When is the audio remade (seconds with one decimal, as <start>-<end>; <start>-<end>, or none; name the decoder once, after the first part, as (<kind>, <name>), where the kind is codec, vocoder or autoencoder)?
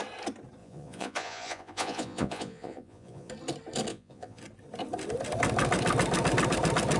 0.6-3.3 (vocoder, Vocos); 3.9-4.4